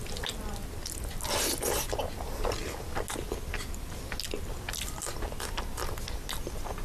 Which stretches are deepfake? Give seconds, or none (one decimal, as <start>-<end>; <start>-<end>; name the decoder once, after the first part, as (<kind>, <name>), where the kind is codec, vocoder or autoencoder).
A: none